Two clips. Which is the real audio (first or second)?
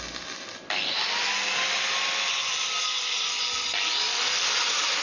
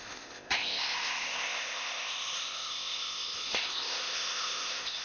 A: first